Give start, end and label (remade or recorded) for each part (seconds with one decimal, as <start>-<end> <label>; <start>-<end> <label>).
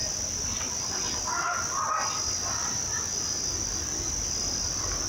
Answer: 0.0-5.1 recorded